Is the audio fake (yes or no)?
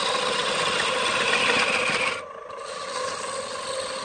no